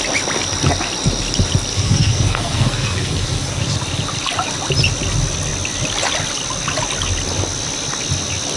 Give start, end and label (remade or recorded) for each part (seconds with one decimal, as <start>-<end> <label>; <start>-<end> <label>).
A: 0.0-1.7 recorded; 1.7-3.6 remade; 3.6-8.6 recorded